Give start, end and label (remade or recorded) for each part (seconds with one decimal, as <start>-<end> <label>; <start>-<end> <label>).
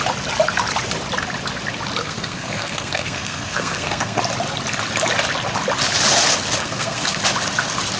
0.0-2.0 recorded; 2.0-4.2 remade; 4.2-6.6 recorded; 6.6-7.2 remade; 7.2-8.0 recorded